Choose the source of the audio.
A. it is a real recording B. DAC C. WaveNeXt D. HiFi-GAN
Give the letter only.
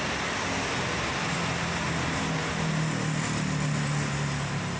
A